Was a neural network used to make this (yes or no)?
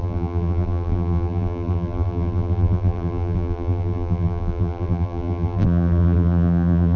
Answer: yes